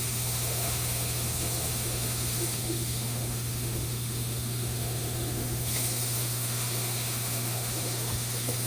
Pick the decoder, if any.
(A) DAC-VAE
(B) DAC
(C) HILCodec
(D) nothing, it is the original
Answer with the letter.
A